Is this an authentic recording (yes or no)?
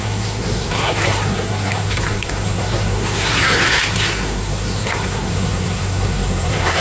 no